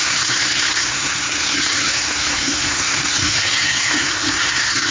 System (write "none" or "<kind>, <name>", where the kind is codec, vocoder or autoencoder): codec, SNAC